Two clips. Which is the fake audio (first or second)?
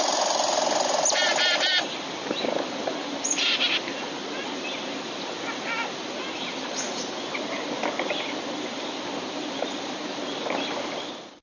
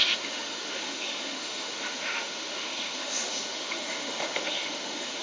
second